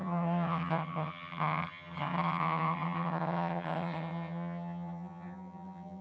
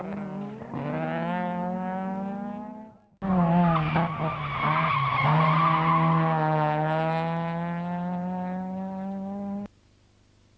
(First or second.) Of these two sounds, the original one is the second